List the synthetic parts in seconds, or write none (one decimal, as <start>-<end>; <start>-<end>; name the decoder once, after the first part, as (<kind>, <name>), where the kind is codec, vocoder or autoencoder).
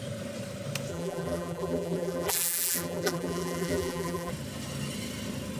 0.9-4.3 (vocoder, BigVGAN v2)